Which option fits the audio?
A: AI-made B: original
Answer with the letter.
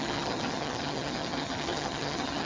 A